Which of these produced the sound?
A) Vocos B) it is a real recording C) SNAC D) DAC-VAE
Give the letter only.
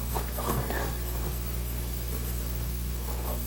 C